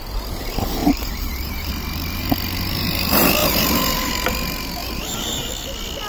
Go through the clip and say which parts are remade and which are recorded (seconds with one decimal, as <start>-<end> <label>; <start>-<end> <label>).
0.0-0.8 recorded; 0.8-1.7 remade; 1.7-3.4 recorded; 3.4-4.1 remade; 4.1-4.8 recorded; 4.8-5.5 remade; 5.5-6.1 recorded